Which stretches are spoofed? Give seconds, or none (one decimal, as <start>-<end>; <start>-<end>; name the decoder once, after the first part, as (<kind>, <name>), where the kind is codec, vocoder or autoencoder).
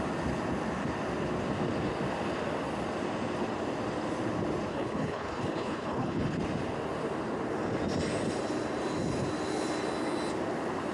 4.7-6.4 (codec, HILCodec)